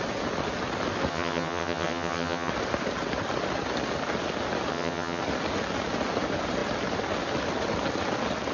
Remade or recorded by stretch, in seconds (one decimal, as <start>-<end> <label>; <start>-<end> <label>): 0.0-1.1 recorded; 1.1-2.5 remade; 2.5-4.7 recorded; 4.7-5.2 remade; 5.2-8.5 recorded

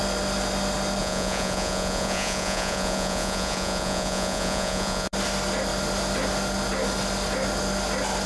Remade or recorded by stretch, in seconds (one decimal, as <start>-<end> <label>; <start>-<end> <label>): 0.0-1.0 recorded; 1.0-5.1 remade; 5.1-8.3 recorded

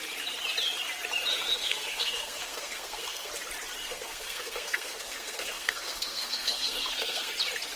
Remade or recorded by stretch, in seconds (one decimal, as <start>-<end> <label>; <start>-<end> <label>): 0.0-1.3 recorded; 1.3-3.3 remade; 3.3-3.8 recorded; 3.8-7.3 remade; 7.3-7.8 recorded

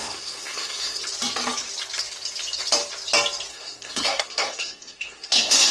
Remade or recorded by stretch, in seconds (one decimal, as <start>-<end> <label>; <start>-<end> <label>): 0.0-1.0 remade; 1.0-3.5 recorded; 3.5-5.7 remade

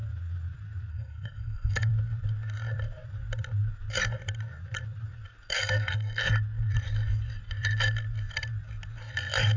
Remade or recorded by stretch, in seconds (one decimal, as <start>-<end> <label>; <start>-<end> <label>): 0.0-0.9 recorded; 0.9-1.9 remade; 1.9-5.5 recorded; 5.5-6.2 remade; 6.2-9.6 recorded

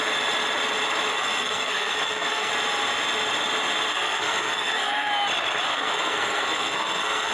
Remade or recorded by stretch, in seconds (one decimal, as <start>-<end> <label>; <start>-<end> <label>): 0.0-1.1 recorded; 1.1-2.5 remade; 2.5-3.9 recorded; 3.9-5.1 remade; 5.1-5.7 recorded; 5.7-7.3 remade

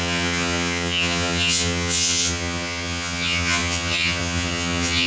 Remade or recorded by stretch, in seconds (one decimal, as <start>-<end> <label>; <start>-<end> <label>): 0.0-5.1 remade

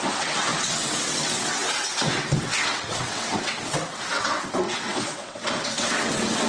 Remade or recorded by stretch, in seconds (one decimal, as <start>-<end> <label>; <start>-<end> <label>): 0.0-6.5 remade